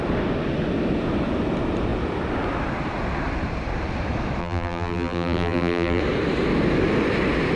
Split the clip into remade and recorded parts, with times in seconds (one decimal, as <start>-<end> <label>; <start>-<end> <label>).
0.0-4.4 recorded; 4.4-6.0 remade; 6.0-7.6 recorded